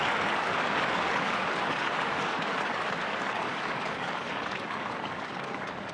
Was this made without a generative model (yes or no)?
no